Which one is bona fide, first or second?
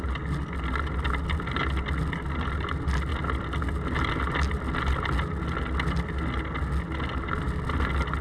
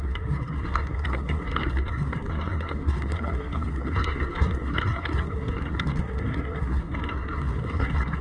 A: first